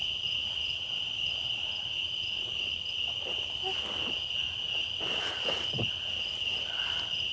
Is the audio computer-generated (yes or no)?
no